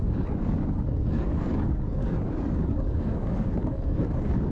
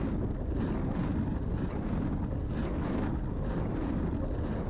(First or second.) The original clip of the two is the second